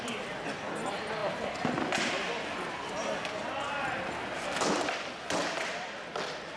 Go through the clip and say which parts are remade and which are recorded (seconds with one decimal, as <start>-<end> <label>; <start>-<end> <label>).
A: 0.0-6.6 recorded